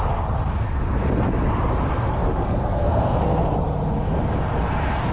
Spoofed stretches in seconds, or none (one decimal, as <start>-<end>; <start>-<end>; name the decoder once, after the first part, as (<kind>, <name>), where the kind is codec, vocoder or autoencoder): 1.8-3.4 (codec, SNAC)

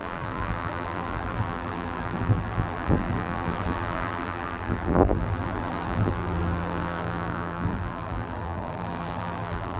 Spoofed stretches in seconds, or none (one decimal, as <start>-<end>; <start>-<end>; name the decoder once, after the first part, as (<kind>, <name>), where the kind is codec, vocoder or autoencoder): 0.0-9.8 (vocoder, BigVGAN v2)

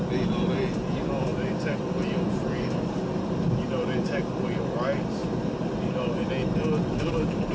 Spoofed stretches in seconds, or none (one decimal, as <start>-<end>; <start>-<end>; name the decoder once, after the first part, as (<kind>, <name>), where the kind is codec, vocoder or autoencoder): 5.2-6.3 (vocoder, BigVGAN v2)

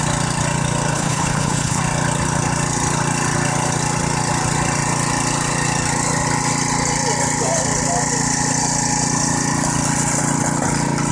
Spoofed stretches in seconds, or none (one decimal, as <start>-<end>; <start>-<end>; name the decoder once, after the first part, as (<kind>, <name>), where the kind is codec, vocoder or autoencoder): 0.9-1.8 (codec, HILCodec)

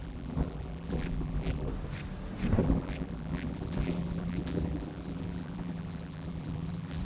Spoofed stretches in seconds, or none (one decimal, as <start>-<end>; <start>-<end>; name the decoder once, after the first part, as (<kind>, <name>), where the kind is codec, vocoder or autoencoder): 0.0-1.7 (vocoder, BigVGAN v2); 2.6-7.0

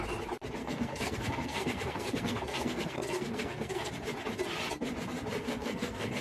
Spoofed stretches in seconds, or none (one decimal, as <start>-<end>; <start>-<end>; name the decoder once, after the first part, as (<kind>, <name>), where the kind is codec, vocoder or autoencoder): 0.6-3.9 (codec, SNAC); 5.4-6.2

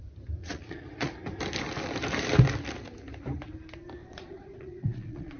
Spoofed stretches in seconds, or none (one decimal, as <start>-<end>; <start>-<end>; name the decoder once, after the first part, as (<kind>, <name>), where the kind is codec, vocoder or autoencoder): 0.4-1.1 (vocoder, Vocos); 4.0-5.4

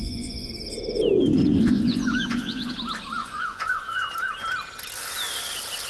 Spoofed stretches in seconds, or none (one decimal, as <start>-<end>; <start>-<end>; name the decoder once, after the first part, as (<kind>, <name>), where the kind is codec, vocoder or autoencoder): 0.0-0.5 (vocoder, Vocos); 1.4-2.7; 3.2-4.1